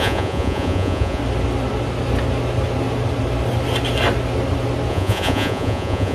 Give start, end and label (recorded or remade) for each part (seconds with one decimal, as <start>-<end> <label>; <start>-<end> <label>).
0.0-1.2 remade; 1.2-4.9 recorded; 4.9-6.1 remade